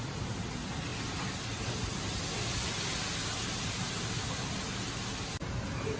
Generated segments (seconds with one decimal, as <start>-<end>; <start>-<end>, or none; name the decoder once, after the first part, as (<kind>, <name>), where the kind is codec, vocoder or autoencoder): none